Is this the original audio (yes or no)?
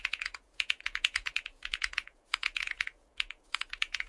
no